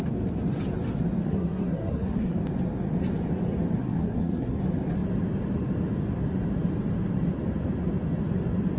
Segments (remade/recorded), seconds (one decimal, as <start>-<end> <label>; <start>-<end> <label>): 0.0-1.2 recorded; 1.2-2.4 remade; 2.4-3.8 recorded; 3.8-4.6 remade; 4.6-8.8 recorded